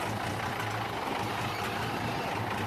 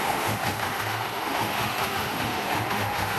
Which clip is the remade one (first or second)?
second